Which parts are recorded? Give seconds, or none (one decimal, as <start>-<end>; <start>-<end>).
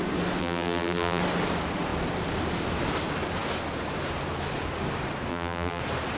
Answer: 0.0-0.4; 1.2-5.3; 5.8-6.2